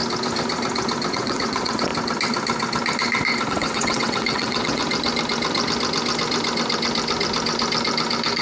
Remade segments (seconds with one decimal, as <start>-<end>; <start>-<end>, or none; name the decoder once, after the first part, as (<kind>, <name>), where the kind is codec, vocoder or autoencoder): 1.1-1.9 (vocoder, WaveNeXt); 3.5-4.8

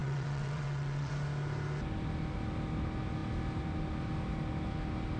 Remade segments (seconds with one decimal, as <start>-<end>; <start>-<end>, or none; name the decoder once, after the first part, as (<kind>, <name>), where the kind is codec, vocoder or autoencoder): 0.0-1.1 (vocoder, WaveNeXt)

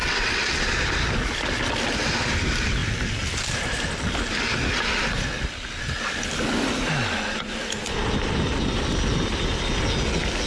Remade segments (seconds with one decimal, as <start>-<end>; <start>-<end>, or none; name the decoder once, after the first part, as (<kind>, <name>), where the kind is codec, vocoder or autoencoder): 0.0-0.6 (vocoder, WaveNeXt)